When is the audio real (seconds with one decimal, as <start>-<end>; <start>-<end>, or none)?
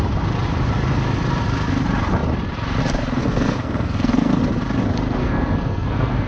0.0-3.2; 4.4-5.2